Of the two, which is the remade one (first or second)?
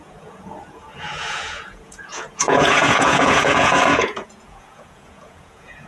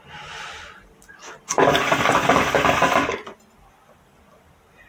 first